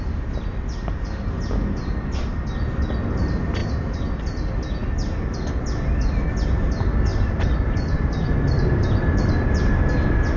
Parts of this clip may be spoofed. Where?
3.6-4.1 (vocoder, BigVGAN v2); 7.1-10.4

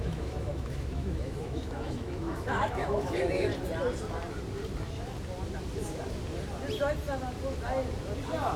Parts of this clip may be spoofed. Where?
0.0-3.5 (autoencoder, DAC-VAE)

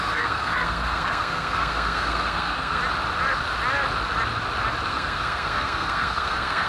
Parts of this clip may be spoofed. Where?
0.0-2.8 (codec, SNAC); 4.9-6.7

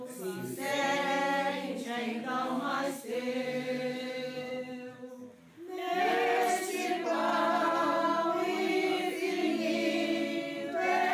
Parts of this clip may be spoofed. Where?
1.2-5.1 (autoencoder, DAC-VAE)

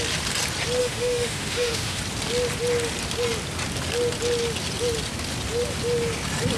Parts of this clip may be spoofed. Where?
0.8-2.0 (autoencoder, DAC-VAE)

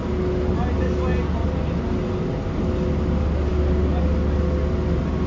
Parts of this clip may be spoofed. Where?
none

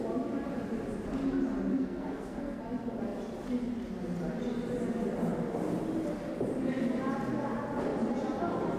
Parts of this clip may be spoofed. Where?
1.7-2.6 (codec, SNAC)